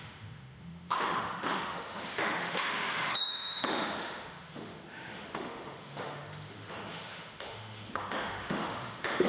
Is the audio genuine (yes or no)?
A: no